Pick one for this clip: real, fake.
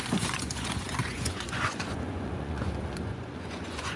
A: fake